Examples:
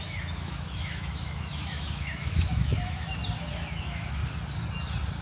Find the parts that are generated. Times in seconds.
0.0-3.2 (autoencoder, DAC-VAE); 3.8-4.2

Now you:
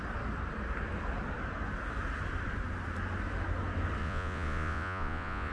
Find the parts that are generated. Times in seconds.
4.0-5.5 (vocoder, Vocos)

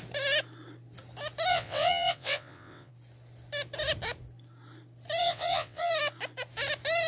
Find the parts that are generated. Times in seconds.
1.5-2.9 (vocoder, WaveNeXt); 5.2-5.9

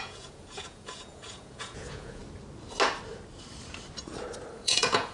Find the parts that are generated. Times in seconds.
0.0-2.2 (vocoder, Vocos); 4.5-5.1

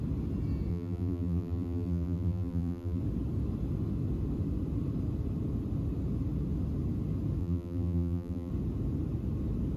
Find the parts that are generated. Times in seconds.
0.7-3.0 (vocoder, BigVGAN v2); 7.4-8.5

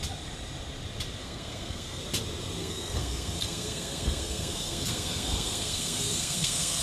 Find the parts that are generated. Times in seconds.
1.2-2.0 (codec, SNAC); 2.6-6.8

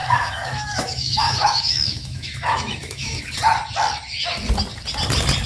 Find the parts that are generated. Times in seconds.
0.0-3.3 (autoencoder, DAC-VAE)

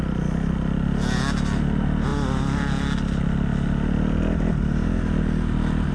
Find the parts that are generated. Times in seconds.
none